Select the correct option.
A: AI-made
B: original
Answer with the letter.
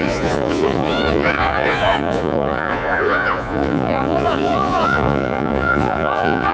A